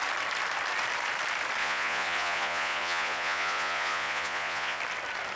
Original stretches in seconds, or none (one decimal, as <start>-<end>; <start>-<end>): 0.0-1.6; 4.8-5.4